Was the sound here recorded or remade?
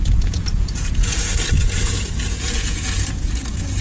remade